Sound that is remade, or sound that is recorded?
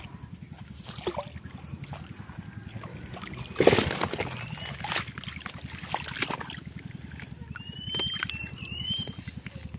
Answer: recorded